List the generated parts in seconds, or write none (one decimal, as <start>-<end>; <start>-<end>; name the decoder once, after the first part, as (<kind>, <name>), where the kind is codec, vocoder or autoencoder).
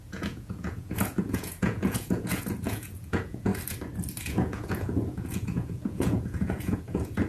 0.0-3.5 (vocoder, Vocos); 4.3-7.3